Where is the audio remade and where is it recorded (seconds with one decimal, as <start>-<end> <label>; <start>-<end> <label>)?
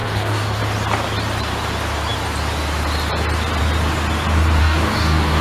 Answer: 0.0-0.6 remade; 0.6-4.6 recorded; 4.6-5.4 remade